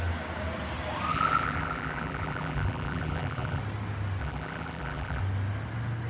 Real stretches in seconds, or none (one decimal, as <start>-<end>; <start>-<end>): 0.0-1.1; 3.6-4.2; 5.2-6.1